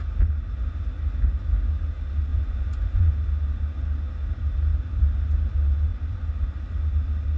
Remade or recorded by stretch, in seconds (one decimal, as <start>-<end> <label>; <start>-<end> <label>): 0.0-2.3 recorded; 2.3-3.1 remade; 3.1-7.4 recorded